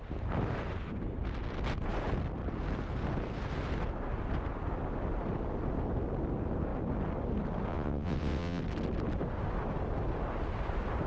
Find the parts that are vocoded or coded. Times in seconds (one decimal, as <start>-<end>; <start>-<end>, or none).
7.7-8.6